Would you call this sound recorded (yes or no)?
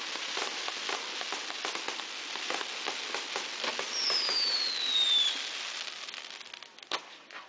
yes